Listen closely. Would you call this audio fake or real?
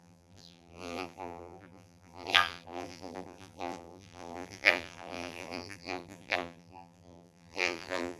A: fake